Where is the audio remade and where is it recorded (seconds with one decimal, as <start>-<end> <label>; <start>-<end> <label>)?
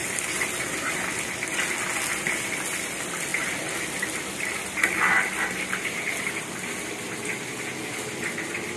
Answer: 0.0-8.8 recorded